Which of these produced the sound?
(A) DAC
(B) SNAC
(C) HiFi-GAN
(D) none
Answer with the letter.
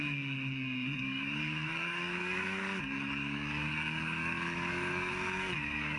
A